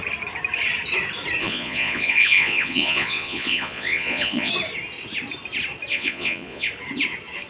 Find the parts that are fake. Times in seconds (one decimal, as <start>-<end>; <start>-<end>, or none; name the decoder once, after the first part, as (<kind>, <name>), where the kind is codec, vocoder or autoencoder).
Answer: 1.4-4.5 (vocoder, Vocos); 5.9-6.7